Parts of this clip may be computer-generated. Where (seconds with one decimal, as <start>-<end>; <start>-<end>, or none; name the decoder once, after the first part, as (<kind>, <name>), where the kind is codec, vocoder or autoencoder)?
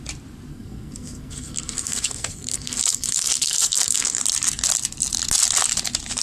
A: 0.5-4.2 (codec, SNAC)